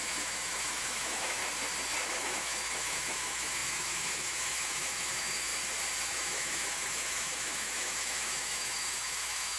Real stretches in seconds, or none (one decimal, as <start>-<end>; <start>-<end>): 1.4-2.1; 5.5-6.0